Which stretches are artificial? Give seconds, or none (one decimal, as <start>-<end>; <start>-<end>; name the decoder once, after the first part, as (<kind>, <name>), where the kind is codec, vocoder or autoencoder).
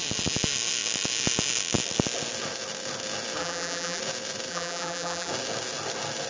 3.4-4.0 (vocoder, BigVGAN v2); 4.5-5.3